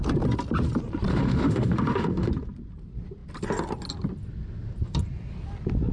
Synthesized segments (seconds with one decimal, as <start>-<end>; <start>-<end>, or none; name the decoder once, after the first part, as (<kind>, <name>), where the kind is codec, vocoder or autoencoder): 1.1-2.3 (autoencoder, DAC-VAE)